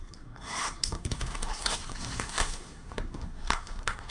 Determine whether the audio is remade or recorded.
remade